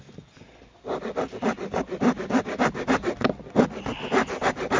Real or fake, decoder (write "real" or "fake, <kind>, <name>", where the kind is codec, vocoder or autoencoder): real